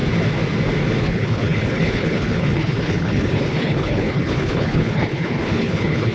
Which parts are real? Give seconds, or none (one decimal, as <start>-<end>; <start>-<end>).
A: 0.0-1.0